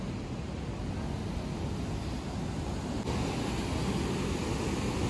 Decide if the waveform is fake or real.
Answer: real